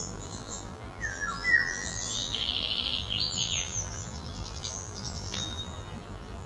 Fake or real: fake